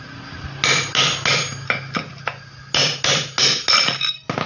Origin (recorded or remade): recorded